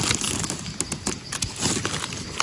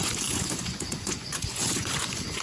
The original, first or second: first